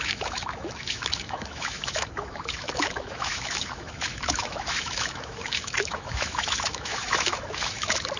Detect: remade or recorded remade